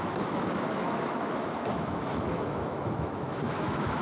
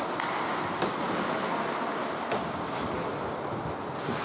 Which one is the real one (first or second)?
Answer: second